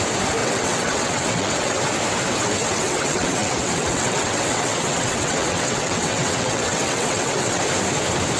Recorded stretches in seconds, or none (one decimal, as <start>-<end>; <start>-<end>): 0.0-0.4; 1.8-2.6; 7.6-8.4